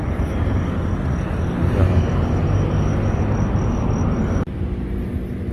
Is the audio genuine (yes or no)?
yes